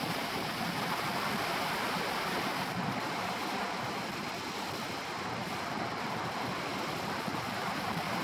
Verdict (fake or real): fake